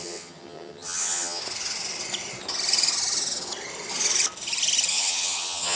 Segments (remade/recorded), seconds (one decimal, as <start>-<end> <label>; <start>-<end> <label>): 0.0-1.4 remade; 1.4-4.9 recorded; 4.9-5.8 remade